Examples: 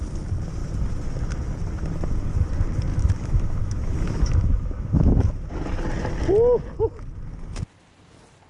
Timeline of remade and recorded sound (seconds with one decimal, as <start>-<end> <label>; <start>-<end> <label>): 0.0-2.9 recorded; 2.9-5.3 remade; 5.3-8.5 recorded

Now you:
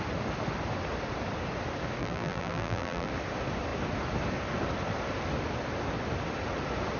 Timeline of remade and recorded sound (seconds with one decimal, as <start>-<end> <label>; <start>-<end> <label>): 0.0-2.0 recorded; 2.0-3.1 remade; 3.1-7.0 recorded

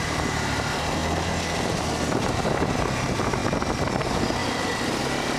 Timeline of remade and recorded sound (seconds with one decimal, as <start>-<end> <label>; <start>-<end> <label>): 0.0-1.0 remade; 1.0-2.7 recorded; 2.7-3.4 remade; 3.4-3.9 recorded; 3.9-4.4 remade; 4.4-5.0 recorded; 5.0-5.4 remade

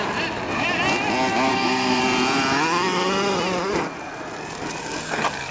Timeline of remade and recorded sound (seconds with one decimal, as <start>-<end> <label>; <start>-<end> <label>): 0.0-1.5 recorded; 1.5-2.0 remade; 2.0-5.5 recorded